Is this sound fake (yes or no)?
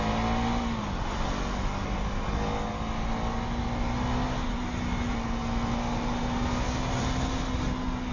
no